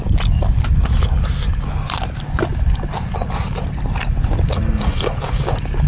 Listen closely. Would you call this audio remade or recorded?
recorded